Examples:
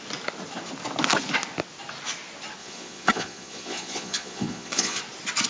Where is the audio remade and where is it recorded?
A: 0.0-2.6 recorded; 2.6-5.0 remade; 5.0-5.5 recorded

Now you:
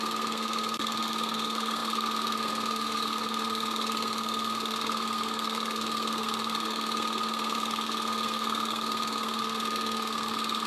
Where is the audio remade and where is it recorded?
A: 0.0-10.7 remade

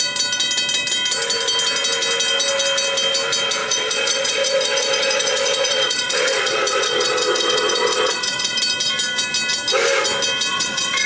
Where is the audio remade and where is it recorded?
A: 0.0-3.6 recorded; 3.6-8.6 remade; 8.6-10.5 recorded; 10.5-11.1 remade

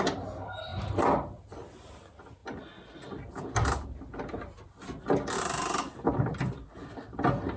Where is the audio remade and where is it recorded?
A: 0.0-7.6 recorded

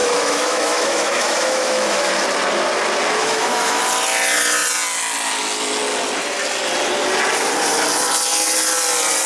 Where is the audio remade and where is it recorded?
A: 0.0-2.1 remade; 2.1-3.2 recorded; 3.2-3.8 remade; 3.8-9.3 recorded

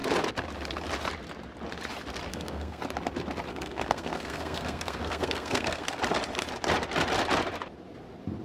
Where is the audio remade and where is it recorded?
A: 0.0-2.3 recorded; 2.3-2.8 remade; 2.8-3.5 recorded; 3.5-6.0 remade; 6.0-8.4 recorded

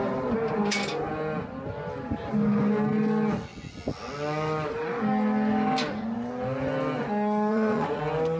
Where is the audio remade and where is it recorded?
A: 0.0-7.5 recorded; 7.5-8.0 remade; 8.0-8.4 recorded

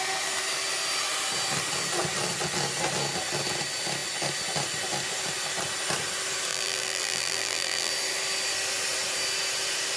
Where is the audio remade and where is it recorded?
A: 0.0-6.5 recorded; 6.5-7.9 remade; 7.9-10.0 recorded